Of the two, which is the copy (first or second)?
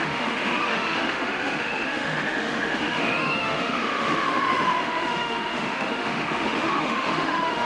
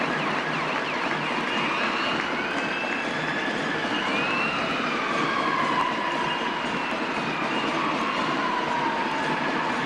first